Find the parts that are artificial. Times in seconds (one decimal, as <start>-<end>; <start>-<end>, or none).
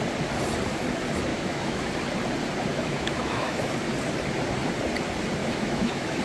1.3-1.9; 2.7-3.7; 5.4-6.2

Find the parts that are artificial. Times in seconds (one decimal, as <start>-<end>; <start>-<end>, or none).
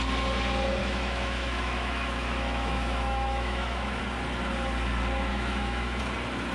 0.8-4.0; 5.3-6.0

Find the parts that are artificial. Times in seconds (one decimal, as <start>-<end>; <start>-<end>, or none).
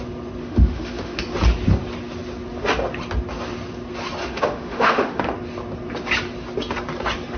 0.4-1.2; 4.2-5.2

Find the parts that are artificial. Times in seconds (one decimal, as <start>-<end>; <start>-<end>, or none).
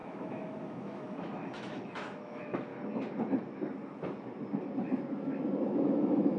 0.0-2.7; 5.8-6.4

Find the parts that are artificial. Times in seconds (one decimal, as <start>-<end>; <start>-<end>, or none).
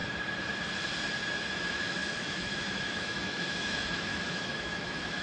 1.5-5.2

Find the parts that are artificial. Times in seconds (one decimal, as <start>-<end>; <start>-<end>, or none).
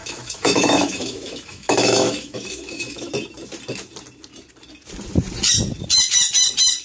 0.0-3.1